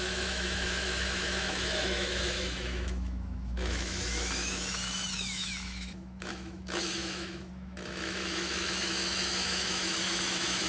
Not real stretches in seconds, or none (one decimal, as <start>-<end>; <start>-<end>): 0.0-10.7